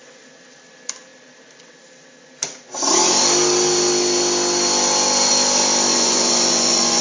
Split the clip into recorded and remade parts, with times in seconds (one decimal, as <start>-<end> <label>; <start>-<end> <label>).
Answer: 0.0-5.9 recorded; 5.9-7.0 remade